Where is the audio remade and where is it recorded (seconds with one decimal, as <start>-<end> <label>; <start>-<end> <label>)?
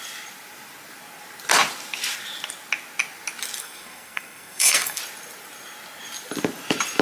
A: 0.0-3.6 recorded; 3.6-5.0 remade; 5.0-7.0 recorded